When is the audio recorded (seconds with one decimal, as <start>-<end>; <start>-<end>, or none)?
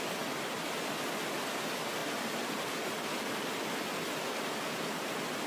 0.0-5.5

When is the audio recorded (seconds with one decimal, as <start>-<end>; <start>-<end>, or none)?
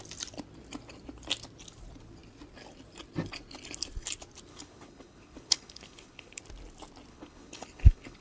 0.0-4.5; 6.4-7.1